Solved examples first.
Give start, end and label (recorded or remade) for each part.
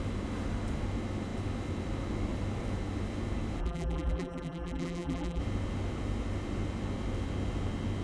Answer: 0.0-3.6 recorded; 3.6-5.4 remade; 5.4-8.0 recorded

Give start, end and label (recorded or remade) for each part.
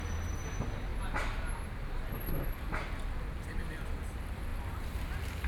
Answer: 0.0-0.9 recorded; 0.9-3.6 remade; 3.6-4.5 recorded; 4.5-5.5 remade